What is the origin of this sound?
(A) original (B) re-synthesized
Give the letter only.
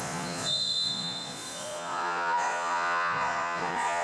B